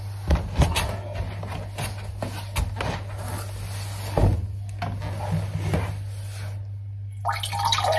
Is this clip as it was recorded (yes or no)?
yes